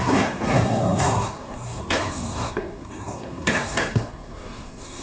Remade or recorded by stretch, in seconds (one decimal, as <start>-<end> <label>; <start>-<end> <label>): 0.0-5.0 remade